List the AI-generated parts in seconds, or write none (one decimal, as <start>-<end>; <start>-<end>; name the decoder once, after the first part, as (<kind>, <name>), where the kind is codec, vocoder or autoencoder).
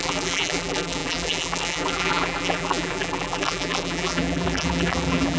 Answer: 0.0-5.4 (vocoder, BigVGAN v2)